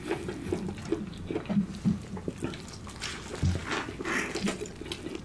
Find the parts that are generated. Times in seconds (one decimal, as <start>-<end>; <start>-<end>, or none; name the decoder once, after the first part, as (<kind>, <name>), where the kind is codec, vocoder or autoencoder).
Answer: none